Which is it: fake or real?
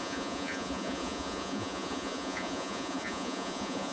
fake